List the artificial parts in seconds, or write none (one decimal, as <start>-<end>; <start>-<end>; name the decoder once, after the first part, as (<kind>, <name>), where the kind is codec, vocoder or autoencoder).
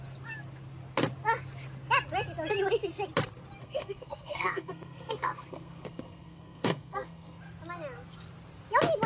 3.6-7.4 (codec, SNAC)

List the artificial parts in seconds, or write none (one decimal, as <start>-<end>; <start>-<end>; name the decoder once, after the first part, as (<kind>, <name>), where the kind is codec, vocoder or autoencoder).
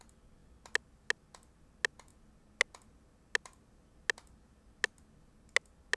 none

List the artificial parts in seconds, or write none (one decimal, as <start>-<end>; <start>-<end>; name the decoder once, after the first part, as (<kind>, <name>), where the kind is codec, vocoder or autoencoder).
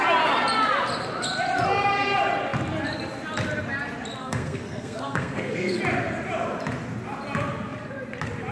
4.2-5.8 (codec, SNAC)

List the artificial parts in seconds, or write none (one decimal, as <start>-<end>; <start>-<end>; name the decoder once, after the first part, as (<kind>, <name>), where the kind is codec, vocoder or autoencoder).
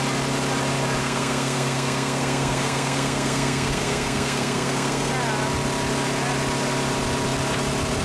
1.0-5.1 (codec, SNAC)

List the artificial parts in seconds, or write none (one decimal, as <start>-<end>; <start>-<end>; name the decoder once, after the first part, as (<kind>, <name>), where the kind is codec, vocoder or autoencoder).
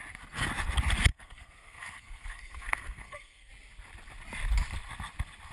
1.1-3.5 (codec, SNAC)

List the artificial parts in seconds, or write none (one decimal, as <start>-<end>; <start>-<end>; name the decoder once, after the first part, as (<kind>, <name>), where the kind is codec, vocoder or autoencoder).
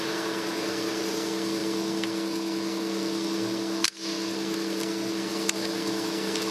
0.0-6.5 (codec, SNAC)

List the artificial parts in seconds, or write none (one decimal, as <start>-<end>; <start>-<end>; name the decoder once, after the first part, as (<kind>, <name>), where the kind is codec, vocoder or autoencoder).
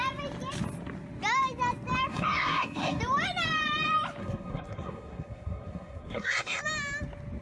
2.1-3.0 (codec, SNAC); 4.2-6.6